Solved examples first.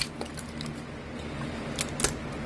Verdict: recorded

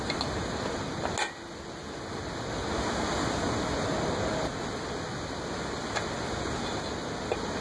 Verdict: recorded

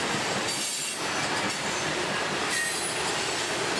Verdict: recorded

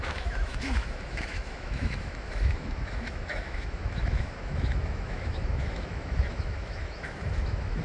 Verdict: remade